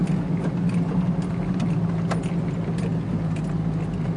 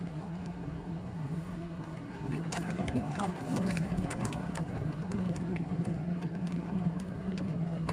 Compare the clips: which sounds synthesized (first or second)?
second